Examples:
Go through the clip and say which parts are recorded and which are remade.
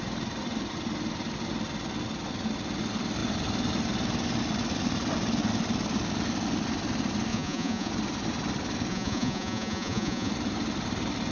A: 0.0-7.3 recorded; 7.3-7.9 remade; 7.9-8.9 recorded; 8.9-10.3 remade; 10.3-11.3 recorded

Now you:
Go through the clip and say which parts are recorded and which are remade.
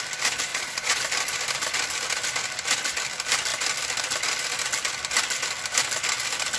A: 0.0-0.5 recorded; 0.5-1.0 remade; 1.0-6.6 recorded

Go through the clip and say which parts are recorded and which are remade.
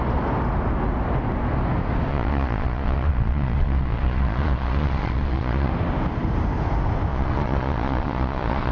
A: 0.0-2.1 recorded; 2.1-5.7 remade; 5.7-7.1 recorded; 7.1-8.7 remade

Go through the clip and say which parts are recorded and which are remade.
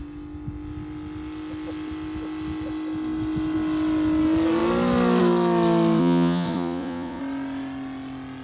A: 0.0-6.0 recorded; 6.0-7.2 remade; 7.2-8.4 recorded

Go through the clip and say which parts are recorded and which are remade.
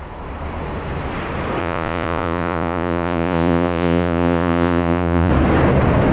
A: 0.0-1.6 recorded; 1.6-5.3 remade; 5.3-6.1 recorded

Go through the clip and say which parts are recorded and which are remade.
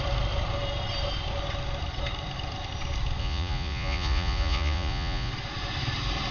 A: 0.0-3.2 recorded; 3.2-5.3 remade; 5.3-6.3 recorded